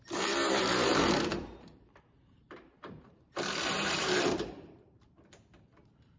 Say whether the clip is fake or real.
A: fake